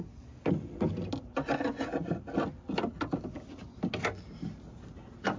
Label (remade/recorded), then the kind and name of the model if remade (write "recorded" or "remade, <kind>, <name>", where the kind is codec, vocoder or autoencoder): recorded